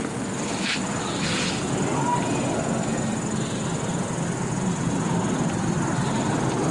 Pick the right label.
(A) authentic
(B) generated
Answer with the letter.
A